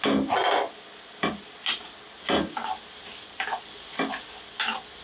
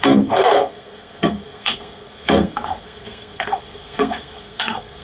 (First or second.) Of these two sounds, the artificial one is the second